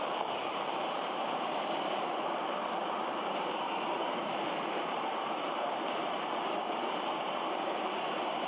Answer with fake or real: fake